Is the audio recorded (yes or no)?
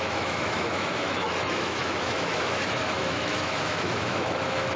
no